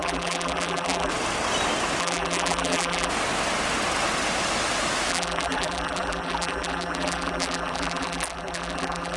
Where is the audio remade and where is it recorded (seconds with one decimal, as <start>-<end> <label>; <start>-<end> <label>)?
0.0-1.1 remade; 1.1-2.0 recorded; 2.0-3.1 remade; 3.1-5.1 recorded; 5.1-9.2 remade